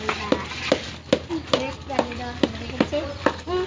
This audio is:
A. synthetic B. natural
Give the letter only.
B